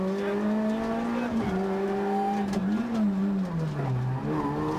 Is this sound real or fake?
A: real